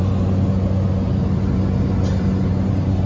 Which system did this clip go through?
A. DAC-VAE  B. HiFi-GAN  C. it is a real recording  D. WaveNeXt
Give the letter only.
C